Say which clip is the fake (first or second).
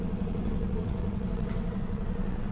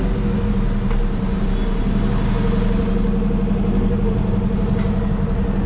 first